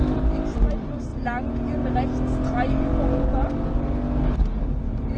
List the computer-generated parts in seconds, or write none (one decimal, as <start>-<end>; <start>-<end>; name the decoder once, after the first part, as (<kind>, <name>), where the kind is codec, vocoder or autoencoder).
0.0-1.1 (vocoder, BigVGAN v2); 4.2-5.2